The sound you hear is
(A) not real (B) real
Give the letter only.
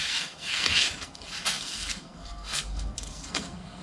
A